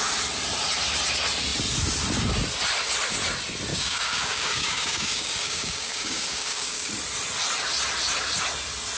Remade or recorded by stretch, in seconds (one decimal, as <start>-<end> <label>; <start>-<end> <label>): 0.0-3.7 recorded; 3.7-6.9 remade; 6.9-9.0 recorded